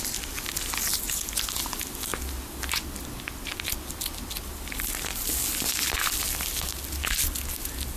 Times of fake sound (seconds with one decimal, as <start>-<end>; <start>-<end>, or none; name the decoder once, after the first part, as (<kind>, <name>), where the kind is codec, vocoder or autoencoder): none